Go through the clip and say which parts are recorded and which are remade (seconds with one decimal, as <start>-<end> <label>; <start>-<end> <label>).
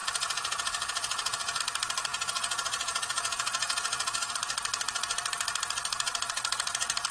0.0-1.6 remade; 1.6-2.1 recorded; 2.1-4.3 remade; 4.3-7.1 recorded